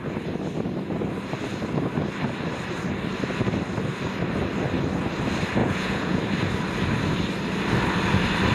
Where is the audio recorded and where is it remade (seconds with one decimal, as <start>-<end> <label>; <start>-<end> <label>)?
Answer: 0.0-5.6 recorded; 5.6-6.2 remade; 6.2-8.5 recorded